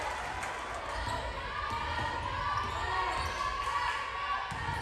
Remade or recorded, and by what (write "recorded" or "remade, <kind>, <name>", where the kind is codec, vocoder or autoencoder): recorded